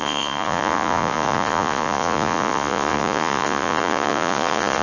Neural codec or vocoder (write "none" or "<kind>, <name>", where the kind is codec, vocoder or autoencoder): vocoder, Vocos